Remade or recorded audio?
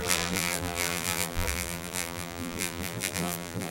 remade